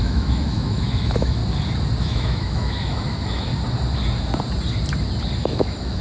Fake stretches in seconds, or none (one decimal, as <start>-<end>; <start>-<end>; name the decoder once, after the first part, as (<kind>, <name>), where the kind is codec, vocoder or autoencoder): 0.0-1.4 (autoencoder, DAC-VAE); 2.0-3.5; 5.4-6.0